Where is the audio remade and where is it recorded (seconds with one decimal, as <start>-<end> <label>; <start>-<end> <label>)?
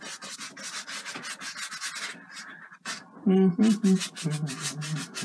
0.0-5.2 recorded